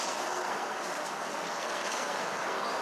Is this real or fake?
fake